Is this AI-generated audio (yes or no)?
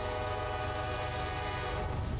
no